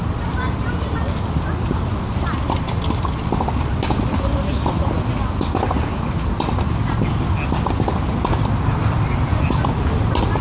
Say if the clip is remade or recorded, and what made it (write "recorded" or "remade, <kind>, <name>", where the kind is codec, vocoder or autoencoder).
recorded